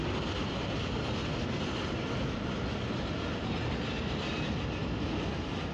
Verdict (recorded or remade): recorded